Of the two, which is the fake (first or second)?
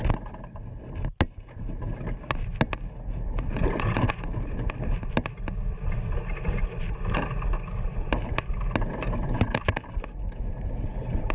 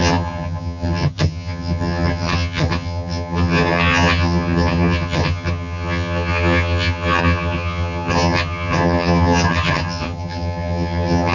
second